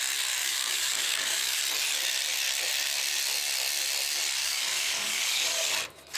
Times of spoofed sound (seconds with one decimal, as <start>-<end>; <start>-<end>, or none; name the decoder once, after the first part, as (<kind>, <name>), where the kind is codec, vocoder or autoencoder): 0.4-1.6 (codec, DAC); 4.4-5.7